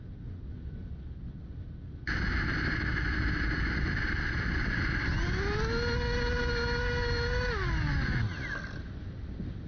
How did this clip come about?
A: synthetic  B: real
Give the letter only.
B